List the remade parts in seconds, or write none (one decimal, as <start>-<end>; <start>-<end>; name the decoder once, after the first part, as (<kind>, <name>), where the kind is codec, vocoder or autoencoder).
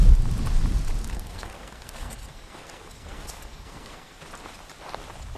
1.0-4.2 (codec, SNAC)